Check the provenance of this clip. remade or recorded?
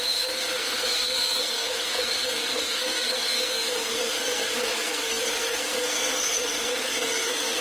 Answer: remade